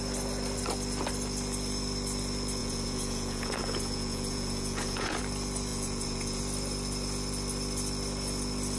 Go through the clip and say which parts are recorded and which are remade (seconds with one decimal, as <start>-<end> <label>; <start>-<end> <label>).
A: 0.0-2.6 recorded; 2.6-5.2 remade; 5.2-5.7 recorded; 5.7-6.4 remade; 6.4-8.8 recorded